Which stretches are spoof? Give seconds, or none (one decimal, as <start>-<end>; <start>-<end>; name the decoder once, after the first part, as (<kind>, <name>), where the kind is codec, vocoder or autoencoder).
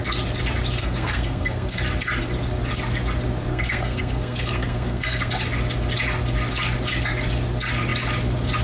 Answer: 0.8-1.8 (codec, SNAC); 3.5-5.3